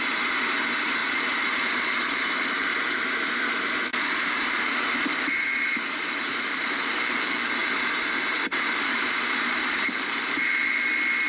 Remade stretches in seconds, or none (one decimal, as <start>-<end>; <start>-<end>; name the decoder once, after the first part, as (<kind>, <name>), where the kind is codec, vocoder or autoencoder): 1.0-3.3 (vocoder, BigVGAN v2); 3.9-7.0; 7.6-10.9